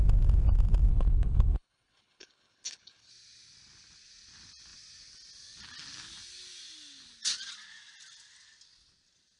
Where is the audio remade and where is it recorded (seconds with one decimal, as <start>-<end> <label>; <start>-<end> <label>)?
0.0-0.9 recorded; 0.9-3.1 remade; 3.1-9.4 recorded